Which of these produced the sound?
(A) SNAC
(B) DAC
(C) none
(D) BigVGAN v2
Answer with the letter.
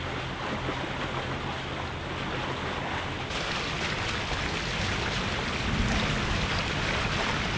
C